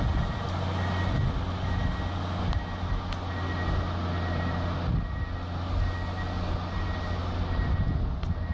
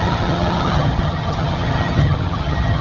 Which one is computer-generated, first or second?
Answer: second